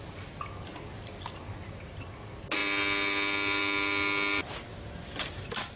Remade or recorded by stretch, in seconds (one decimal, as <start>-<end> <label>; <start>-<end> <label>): 0.0-5.8 recorded